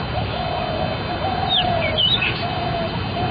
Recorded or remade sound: recorded